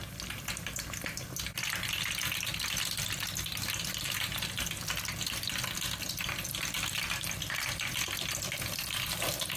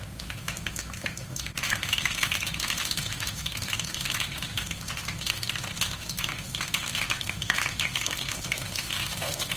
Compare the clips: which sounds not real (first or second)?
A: second